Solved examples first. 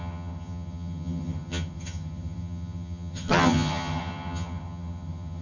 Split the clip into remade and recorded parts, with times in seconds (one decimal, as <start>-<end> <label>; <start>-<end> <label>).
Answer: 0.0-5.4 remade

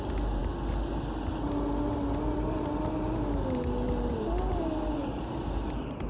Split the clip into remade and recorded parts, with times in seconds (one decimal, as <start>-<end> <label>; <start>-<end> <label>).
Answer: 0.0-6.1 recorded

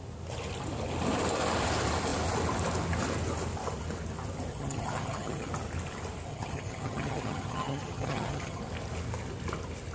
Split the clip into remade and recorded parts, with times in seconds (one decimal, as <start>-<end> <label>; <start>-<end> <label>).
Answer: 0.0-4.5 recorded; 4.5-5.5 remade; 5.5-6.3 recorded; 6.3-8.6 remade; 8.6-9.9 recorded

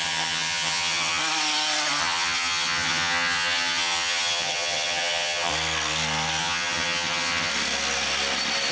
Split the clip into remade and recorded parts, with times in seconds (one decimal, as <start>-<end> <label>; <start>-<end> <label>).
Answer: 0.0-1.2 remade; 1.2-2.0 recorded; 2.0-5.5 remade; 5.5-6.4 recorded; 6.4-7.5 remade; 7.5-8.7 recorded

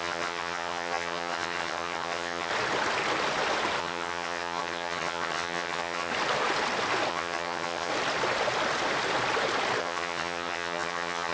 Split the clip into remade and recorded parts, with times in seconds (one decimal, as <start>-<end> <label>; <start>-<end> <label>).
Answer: 0.0-2.5 remade; 2.5-3.8 recorded; 3.8-6.1 remade; 6.1-7.1 recorded; 7.1-7.9 remade; 7.9-9.8 recorded; 9.8-11.3 remade